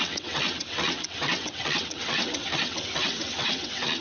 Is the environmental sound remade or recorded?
remade